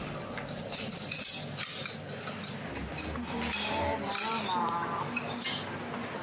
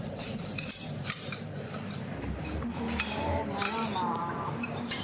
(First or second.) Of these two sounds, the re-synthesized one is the second